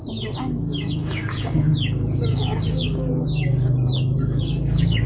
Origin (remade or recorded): remade